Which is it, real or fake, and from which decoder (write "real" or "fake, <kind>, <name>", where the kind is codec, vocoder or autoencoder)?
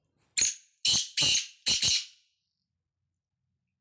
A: real